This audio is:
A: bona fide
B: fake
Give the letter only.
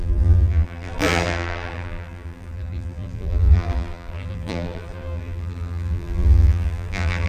B